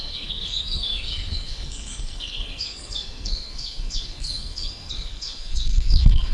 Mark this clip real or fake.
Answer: fake